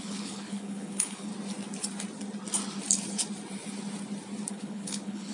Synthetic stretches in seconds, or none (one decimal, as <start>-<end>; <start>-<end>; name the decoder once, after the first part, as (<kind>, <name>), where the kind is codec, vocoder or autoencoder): 0.0-1.3 (codec, HILCodec); 4.5-5.3